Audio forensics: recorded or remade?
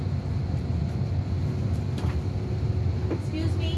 recorded